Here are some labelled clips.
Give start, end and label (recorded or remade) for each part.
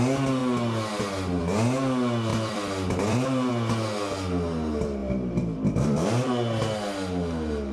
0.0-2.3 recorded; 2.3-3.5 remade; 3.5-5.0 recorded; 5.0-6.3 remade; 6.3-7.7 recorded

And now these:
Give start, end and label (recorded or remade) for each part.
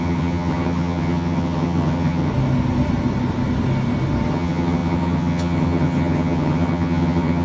0.0-2.3 remade; 2.3-4.3 recorded; 4.3-7.4 remade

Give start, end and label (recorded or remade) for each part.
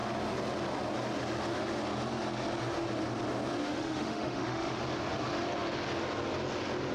0.0-3.6 recorded; 3.6-4.8 remade; 4.8-6.9 recorded